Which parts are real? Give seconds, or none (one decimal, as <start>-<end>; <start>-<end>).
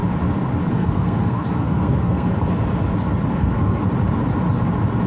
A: 0.0-0.7; 2.3-3.3; 3.8-5.1